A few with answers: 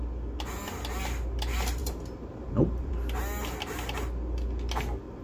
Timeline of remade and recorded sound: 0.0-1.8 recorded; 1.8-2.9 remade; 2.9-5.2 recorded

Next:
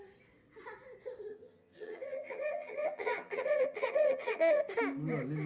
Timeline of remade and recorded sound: 0.0-1.3 recorded; 1.3-4.6 remade; 4.6-5.5 recorded

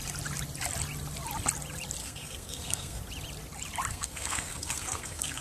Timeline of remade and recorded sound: 0.0-2.0 recorded; 2.0-3.0 remade; 3.0-3.9 recorded; 3.9-5.4 remade

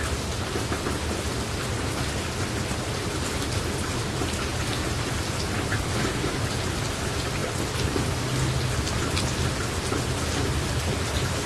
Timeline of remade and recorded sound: 0.0-11.5 recorded

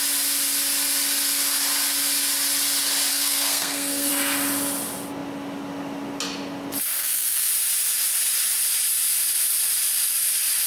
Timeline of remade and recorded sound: 0.0-3.1 recorded; 3.1-4.1 remade; 4.1-7.0 recorded; 7.0-7.5 remade; 7.5-10.7 recorded